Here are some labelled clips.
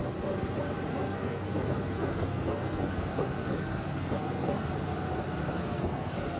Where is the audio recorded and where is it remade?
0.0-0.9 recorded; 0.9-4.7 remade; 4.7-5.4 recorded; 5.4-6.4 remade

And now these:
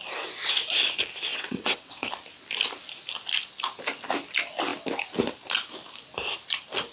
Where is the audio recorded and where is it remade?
0.0-1.3 recorded; 1.3-2.1 remade; 2.1-6.9 recorded

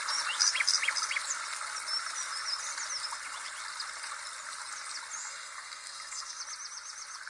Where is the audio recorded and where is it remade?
0.0-5.2 recorded; 5.2-6.4 remade; 6.4-7.3 recorded

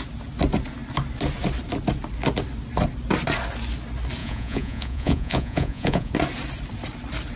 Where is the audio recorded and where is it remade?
0.0-4.2 recorded; 4.2-6.1 remade; 6.1-7.4 recorded